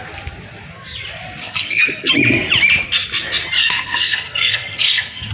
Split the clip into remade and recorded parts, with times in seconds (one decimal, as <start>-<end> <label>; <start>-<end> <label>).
0.0-1.4 recorded; 1.4-2.1 remade; 2.1-3.6 recorded; 3.6-5.3 remade